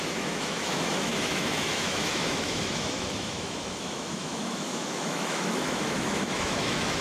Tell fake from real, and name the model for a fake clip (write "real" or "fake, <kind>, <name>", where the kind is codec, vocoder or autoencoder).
fake, autoencoder, DAC-VAE